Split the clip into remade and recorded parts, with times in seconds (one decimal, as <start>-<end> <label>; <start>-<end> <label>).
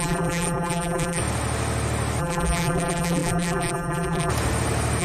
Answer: 0.0-1.2 remade; 1.2-2.2 recorded; 2.2-4.3 remade; 4.3-5.0 recorded